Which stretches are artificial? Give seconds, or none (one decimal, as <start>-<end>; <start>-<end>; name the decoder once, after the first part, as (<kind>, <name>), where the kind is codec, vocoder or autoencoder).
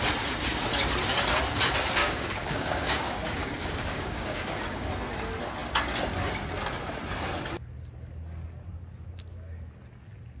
2.0-4.9 (codec, DAC)